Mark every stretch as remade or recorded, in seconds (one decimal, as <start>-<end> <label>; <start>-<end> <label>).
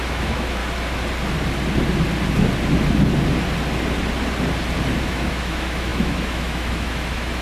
0.0-0.6 remade; 0.6-5.0 recorded; 5.0-7.4 remade